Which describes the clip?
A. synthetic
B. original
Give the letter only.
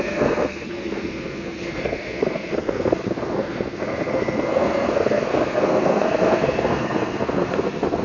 A